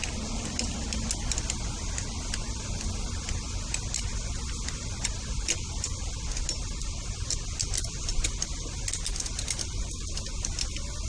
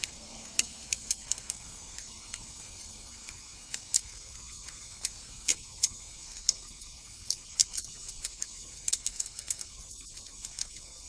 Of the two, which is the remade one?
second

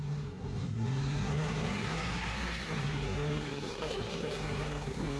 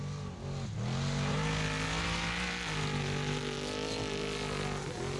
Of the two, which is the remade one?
first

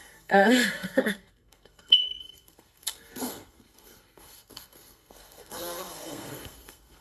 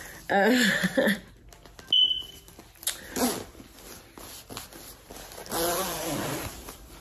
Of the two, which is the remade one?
first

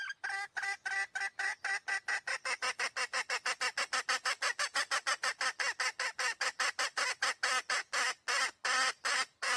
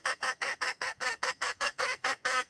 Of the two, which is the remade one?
second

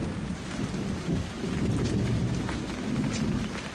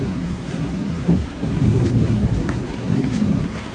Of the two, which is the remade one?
second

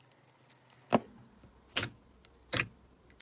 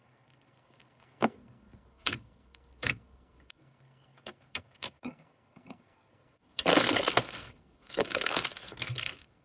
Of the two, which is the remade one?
second